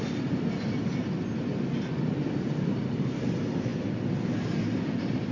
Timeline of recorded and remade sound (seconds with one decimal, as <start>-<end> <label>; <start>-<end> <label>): 0.0-5.3 recorded